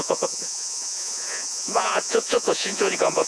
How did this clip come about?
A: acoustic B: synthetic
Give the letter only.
B